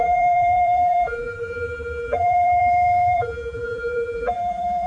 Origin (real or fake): fake